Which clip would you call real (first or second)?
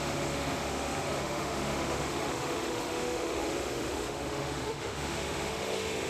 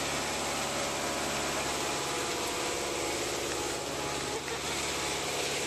second